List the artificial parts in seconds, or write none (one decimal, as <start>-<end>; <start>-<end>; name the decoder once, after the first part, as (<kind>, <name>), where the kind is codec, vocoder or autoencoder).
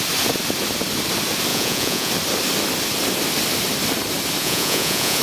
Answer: 1.5-2.1 (vocoder, Vocos); 4.4-5.2